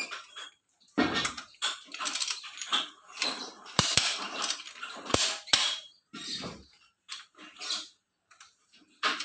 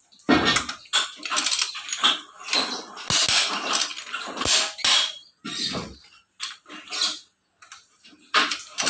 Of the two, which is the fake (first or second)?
first